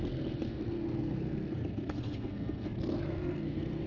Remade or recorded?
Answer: remade